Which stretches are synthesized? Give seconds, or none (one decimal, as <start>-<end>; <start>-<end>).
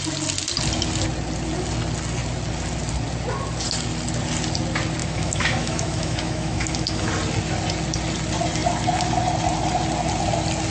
5.0-7.1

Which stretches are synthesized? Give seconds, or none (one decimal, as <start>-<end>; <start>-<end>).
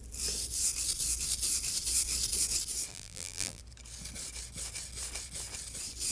2.9-3.6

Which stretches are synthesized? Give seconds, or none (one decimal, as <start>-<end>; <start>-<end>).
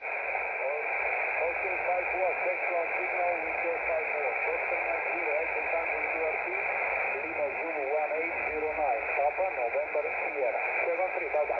none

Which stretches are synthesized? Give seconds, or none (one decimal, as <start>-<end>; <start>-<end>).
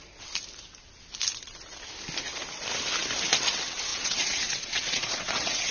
3.4-5.7